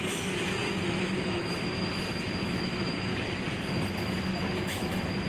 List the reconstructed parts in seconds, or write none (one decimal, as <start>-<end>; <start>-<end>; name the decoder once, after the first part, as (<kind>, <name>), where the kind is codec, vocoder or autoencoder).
0.0-3.1 (autoencoder, DAC-VAE); 4.6-5.3